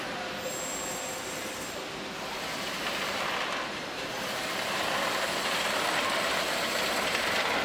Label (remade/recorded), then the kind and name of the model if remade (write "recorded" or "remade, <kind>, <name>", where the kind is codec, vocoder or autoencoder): recorded